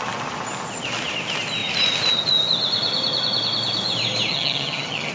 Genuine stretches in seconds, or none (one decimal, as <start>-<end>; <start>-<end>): 0.0-4.3